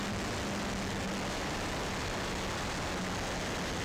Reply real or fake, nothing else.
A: real